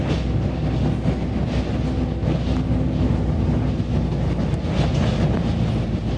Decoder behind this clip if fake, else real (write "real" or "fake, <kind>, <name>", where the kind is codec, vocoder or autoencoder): real